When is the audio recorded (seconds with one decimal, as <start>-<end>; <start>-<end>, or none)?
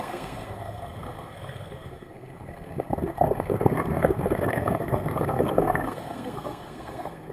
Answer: none